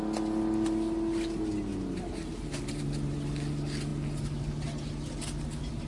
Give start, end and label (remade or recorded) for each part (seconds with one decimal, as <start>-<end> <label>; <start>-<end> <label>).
0.0-5.9 recorded